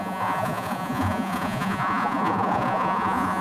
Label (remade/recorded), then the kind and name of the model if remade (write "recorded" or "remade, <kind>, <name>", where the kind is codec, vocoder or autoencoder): remade, vocoder, Vocos